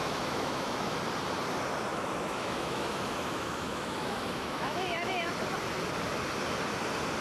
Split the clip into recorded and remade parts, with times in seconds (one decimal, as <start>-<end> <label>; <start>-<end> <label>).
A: 0.0-1.0 remade; 1.0-1.9 recorded; 1.9-5.3 remade; 5.3-7.2 recorded